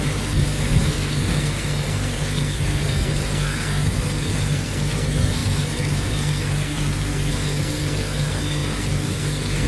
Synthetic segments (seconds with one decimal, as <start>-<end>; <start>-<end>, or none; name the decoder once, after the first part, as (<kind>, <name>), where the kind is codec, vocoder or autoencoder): 0.0-9.7 (codec, SNAC)